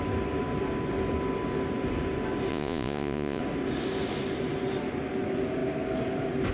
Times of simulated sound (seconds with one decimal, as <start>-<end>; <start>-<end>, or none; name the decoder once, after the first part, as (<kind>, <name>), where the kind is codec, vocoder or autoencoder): 2.5-3.4 (vocoder, Vocos)